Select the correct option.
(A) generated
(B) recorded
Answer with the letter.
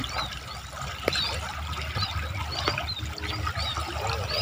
B